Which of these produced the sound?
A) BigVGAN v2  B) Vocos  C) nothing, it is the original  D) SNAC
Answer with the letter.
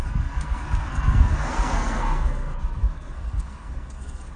D